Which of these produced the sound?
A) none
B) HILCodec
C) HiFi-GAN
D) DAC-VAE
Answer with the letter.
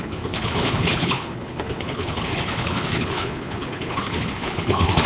B